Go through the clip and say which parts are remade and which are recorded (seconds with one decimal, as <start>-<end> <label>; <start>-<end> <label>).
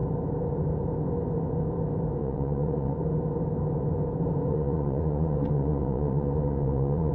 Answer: 0.0-2.2 recorded; 2.2-3.0 remade; 3.0-4.5 recorded; 4.5-7.1 remade